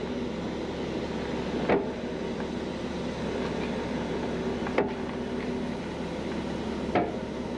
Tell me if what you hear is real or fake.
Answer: real